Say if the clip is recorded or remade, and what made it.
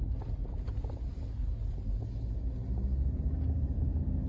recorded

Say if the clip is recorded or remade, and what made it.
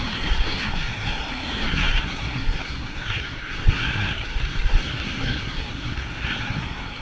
remade, codec, SNAC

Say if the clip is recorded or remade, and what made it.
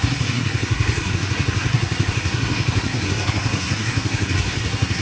remade, codec, SNAC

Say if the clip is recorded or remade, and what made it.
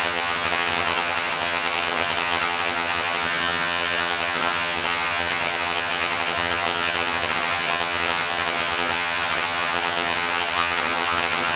remade, vocoder, HiFi-GAN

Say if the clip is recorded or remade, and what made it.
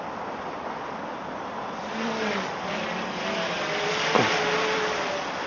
remade, vocoder, BigVGAN v2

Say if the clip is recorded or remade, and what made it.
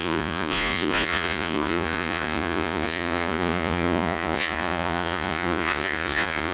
remade, vocoder, Vocos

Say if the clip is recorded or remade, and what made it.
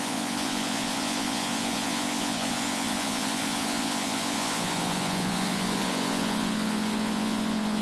remade, vocoder, Vocos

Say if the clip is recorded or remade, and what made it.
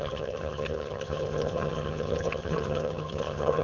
remade, vocoder, HiFi-GAN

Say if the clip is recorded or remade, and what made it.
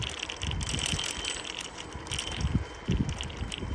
recorded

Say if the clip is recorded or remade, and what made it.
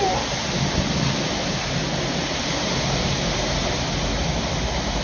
recorded